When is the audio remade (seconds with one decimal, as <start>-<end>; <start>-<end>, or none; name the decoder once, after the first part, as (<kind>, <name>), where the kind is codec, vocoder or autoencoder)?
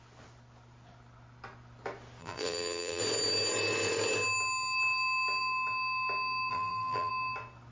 2.2-3.0 (vocoder, BigVGAN v2); 6.5-7.1